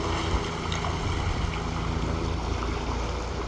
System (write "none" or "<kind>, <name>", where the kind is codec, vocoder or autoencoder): none